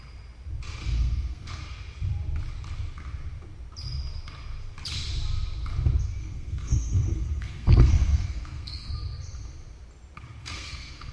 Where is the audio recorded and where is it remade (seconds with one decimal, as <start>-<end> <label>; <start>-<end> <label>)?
0.0-0.8 recorded; 0.8-1.5 remade; 1.5-6.2 recorded; 6.2-8.9 remade; 8.9-10.4 recorded; 10.4-11.1 remade